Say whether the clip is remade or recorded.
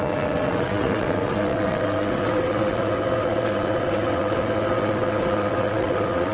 remade